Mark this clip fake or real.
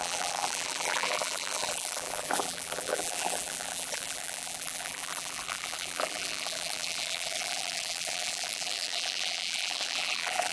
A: fake